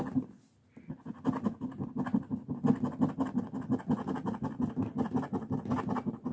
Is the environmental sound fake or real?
real